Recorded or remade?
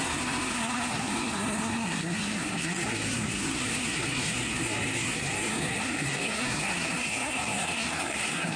remade